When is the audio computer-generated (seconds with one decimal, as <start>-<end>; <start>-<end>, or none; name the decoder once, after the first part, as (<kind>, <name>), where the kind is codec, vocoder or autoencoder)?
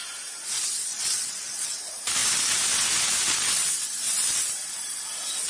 0.9-1.8 (vocoder, WaveNeXt)